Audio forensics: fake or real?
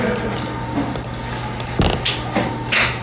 real